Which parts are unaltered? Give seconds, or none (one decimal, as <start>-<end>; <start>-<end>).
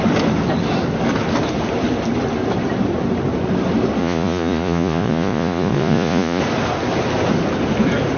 0.0-4.0; 6.4-8.2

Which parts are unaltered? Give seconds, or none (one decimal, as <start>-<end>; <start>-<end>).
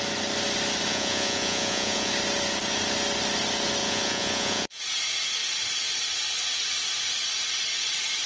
0.0-0.9; 2.1-3.8; 4.8-8.3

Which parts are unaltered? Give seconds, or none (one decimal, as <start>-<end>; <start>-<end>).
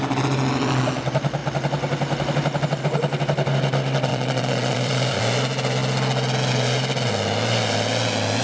0.0-4.1; 5.2-8.4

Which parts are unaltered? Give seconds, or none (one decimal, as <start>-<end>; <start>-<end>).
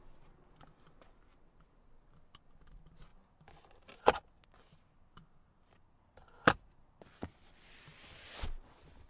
0.0-9.1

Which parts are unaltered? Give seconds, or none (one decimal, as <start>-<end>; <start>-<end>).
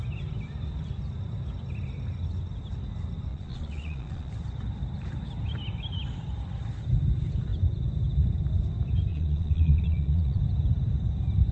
0.0-3.3; 4.3-9.1; 10.4-11.5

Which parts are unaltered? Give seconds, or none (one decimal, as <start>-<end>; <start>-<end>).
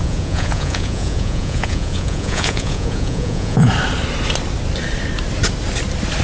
3.7-6.2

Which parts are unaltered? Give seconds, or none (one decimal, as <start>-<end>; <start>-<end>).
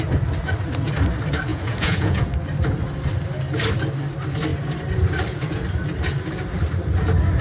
0.0-1.5; 2.3-7.4